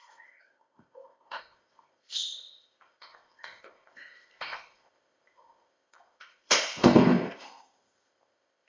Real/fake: fake